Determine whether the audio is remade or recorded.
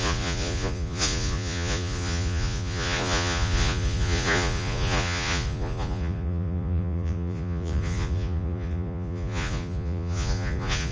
remade